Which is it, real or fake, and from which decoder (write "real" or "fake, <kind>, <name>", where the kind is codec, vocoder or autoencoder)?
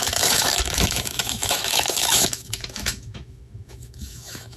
fake, autoencoder, DAC-VAE